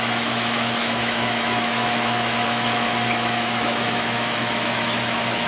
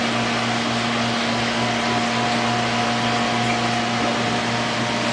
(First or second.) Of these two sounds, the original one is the second